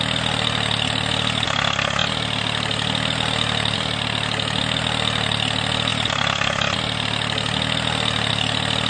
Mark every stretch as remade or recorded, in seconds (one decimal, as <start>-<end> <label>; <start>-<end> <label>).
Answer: 0.0-8.9 recorded